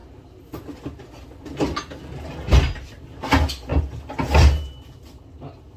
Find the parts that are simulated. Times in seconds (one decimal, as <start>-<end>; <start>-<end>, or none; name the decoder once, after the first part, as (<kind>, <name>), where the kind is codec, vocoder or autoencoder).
none